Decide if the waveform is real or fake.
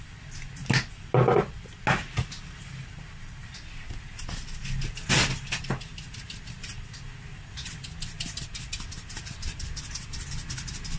real